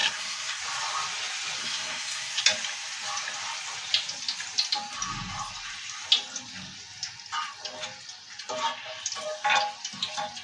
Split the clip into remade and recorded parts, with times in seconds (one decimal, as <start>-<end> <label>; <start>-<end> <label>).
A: 0.0-0.6 remade; 0.6-1.6 recorded; 1.6-2.4 remade; 2.4-10.4 recorded